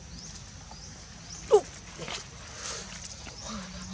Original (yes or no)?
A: yes